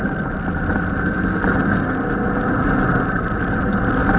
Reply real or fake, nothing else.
real